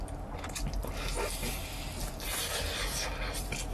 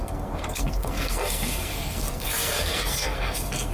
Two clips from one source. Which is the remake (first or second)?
second